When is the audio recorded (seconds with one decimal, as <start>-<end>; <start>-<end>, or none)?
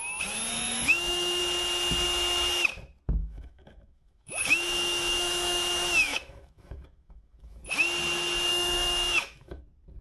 0.0-0.5; 1.4-3.2; 7.6-8.5; 9.6-10.0